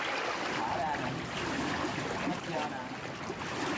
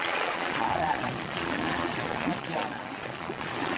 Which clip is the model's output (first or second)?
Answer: second